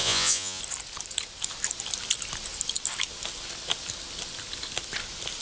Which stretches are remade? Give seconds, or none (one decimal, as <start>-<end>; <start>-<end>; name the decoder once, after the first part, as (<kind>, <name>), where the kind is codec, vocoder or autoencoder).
0.0-0.6 (vocoder, Vocos)